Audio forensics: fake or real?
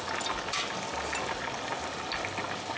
real